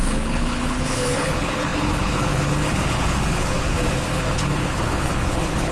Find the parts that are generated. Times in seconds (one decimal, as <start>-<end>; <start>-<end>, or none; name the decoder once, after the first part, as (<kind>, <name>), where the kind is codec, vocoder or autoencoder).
0.0-5.7 (codec, HILCodec)